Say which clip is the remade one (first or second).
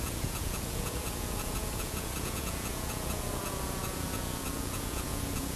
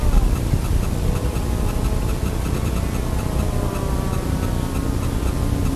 first